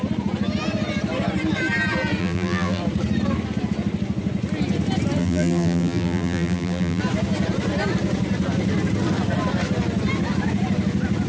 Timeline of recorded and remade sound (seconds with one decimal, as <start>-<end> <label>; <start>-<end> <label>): 0.0-2.2 recorded; 2.2-2.8 remade; 2.8-5.2 recorded; 5.2-7.0 remade; 7.0-11.3 recorded

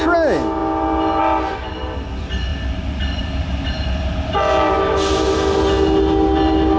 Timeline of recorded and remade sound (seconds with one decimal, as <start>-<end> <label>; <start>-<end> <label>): 0.0-6.8 recorded

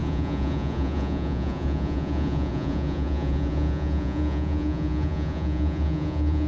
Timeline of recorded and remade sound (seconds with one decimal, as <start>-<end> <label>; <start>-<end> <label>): 0.0-6.5 remade

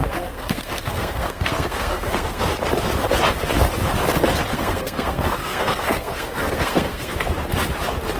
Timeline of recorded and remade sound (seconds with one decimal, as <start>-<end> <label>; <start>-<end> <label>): 0.0-2.5 remade; 2.5-4.5 recorded; 4.5-7.1 remade; 7.1-8.2 recorded

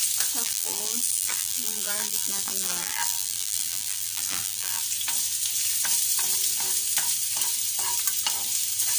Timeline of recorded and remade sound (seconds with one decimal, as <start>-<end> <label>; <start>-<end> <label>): 0.0-0.4 recorded; 0.4-4.8 remade; 4.8-9.0 recorded

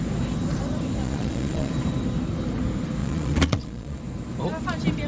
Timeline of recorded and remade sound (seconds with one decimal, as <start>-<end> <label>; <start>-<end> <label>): 0.0-1.0 recorded; 1.0-1.7 remade; 1.7-3.0 recorded; 3.0-4.0 remade; 4.0-5.1 recorded